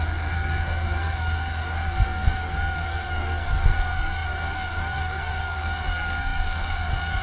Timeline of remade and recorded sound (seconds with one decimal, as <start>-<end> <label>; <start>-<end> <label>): 0.0-7.2 remade